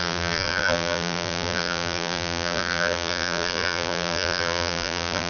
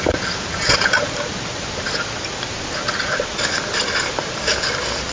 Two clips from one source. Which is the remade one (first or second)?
first